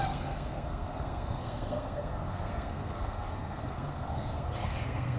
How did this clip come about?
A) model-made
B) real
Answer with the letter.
A